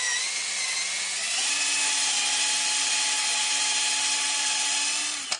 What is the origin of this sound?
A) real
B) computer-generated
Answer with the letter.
A